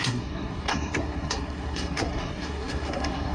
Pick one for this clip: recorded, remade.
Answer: remade